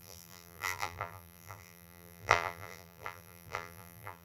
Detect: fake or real fake